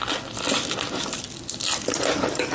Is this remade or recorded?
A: recorded